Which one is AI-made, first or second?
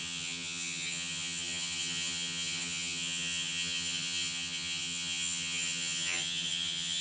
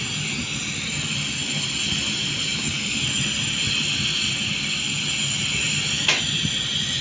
first